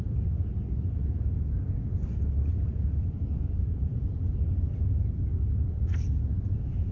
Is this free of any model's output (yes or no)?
yes